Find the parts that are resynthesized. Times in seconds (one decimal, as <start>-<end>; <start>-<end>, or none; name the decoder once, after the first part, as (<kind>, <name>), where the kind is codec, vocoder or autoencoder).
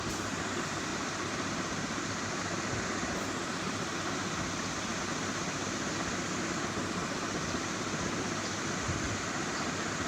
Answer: 0.9-2.3 (vocoder, BigVGAN v2)